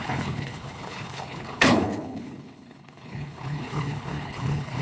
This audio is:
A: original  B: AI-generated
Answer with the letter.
B